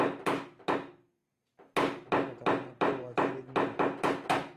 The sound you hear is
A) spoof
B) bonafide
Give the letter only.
B